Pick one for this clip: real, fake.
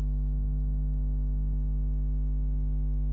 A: real